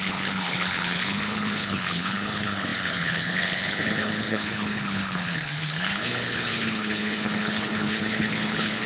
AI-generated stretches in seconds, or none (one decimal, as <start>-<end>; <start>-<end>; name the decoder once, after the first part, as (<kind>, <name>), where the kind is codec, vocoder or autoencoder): 0.0-8.9 (codec, HILCodec)